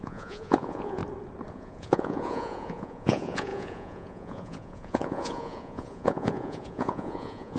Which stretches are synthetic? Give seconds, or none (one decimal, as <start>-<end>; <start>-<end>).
0.0-1.0; 1.5-7.6